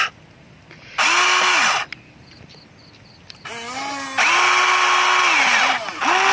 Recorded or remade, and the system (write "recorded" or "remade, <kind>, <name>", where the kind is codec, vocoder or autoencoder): recorded